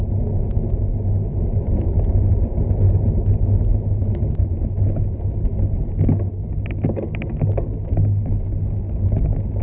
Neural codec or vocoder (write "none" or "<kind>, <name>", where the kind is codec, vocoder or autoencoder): none